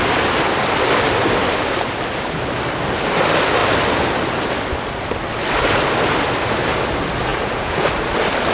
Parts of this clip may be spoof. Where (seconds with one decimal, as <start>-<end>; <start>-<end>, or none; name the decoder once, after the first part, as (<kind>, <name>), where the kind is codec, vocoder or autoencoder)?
7.3-7.9 (vocoder, Vocos)